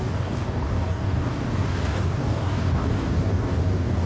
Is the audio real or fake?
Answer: fake